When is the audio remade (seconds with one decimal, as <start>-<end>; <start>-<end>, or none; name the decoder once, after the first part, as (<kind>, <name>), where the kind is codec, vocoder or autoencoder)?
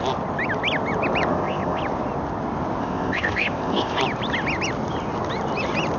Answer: 1.3-1.8 (codec, ZipCodec); 2.8-4.0